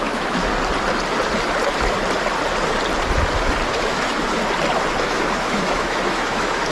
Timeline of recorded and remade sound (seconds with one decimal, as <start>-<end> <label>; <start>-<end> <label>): 0.0-0.5 remade; 0.5-3.7 recorded; 3.7-4.4 remade; 4.4-5.0 recorded; 5.0-6.7 remade